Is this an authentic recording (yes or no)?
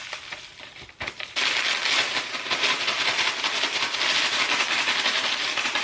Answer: yes